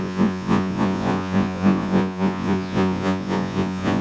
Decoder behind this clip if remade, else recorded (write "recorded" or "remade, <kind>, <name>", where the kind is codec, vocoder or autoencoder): remade, vocoder, Vocos